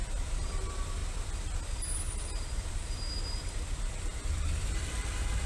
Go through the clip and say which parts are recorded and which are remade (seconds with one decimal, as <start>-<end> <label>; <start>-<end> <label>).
0.0-1.0 remade; 1.0-2.7 recorded; 2.7-5.5 remade

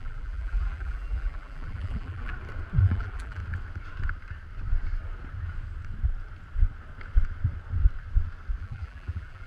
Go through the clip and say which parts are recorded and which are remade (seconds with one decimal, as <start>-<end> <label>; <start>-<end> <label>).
0.0-2.3 remade; 2.3-2.8 recorded; 2.8-3.4 remade; 3.4-8.6 recorded; 8.6-9.5 remade

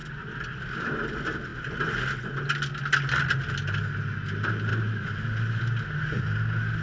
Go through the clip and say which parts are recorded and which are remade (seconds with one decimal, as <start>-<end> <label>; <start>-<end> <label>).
0.0-4.7 recorded; 4.7-5.6 remade; 5.6-6.8 recorded

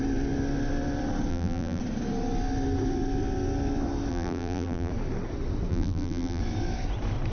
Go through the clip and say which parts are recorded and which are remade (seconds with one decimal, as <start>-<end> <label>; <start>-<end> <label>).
0.0-1.3 recorded; 1.3-1.8 remade; 1.8-4.1 recorded; 4.1-4.9 remade; 4.9-5.7 recorded; 5.7-6.4 remade; 6.4-7.3 recorded